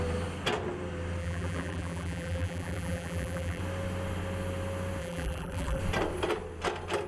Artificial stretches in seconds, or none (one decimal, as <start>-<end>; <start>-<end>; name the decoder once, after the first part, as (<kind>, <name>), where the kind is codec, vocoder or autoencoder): 1.2-3.6 (vocoder, BigVGAN v2); 5.0-5.8